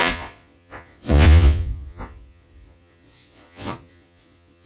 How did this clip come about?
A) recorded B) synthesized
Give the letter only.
B